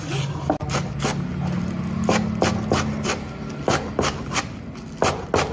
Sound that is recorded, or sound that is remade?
recorded